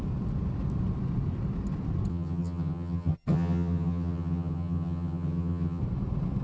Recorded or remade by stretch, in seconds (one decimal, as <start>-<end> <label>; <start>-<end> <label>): 0.0-2.1 recorded; 2.1-5.8 remade; 5.8-6.4 recorded